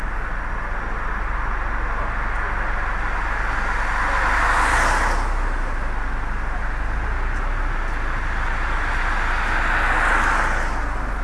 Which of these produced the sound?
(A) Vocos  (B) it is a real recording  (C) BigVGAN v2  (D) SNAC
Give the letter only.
B